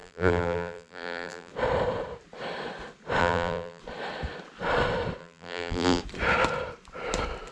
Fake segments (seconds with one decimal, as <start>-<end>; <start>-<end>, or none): 0.0-1.5; 3.2-3.8; 5.2-6.0